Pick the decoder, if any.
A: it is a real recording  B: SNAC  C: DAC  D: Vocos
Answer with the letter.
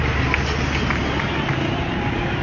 A